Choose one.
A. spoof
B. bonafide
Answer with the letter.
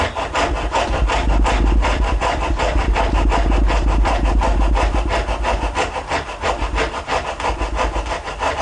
B